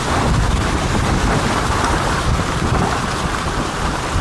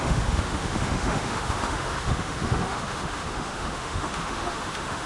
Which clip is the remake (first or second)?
second